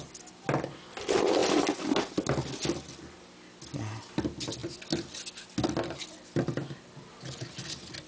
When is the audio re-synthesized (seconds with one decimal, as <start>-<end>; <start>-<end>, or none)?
none